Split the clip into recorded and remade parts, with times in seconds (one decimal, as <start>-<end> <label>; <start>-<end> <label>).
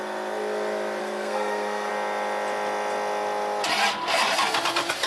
0.0-1.0 recorded; 1.0-1.9 remade; 1.9-5.1 recorded